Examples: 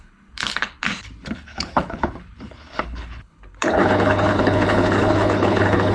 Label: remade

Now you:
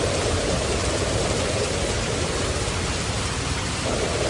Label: recorded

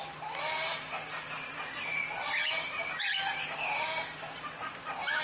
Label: recorded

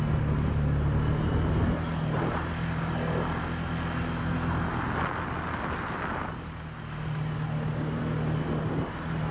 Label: recorded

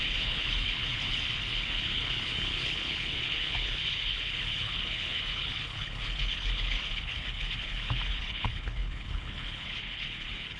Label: remade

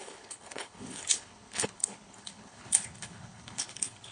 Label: remade